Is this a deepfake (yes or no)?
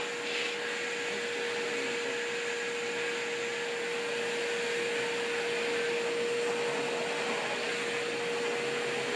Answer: no